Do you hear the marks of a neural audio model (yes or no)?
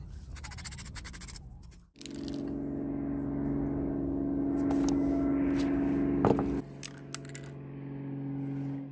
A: no